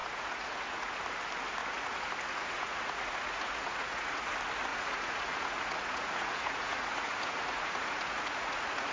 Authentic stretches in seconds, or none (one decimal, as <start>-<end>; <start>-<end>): 0.9-1.6; 4.3-4.7